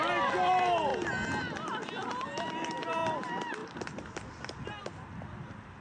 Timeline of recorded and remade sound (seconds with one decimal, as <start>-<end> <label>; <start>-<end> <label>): 0.0-5.8 recorded